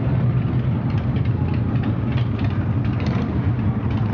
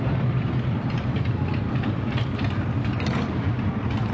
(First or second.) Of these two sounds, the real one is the first